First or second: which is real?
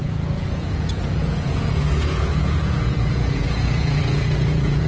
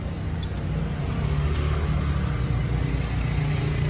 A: second